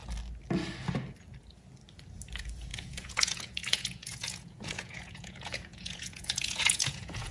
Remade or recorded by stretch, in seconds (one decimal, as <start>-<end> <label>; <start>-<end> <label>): 0.0-2.7 recorded; 2.7-7.3 remade